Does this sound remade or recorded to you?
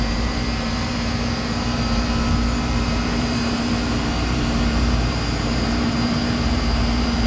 remade